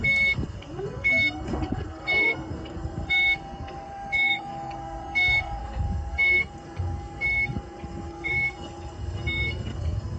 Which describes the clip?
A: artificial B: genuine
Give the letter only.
A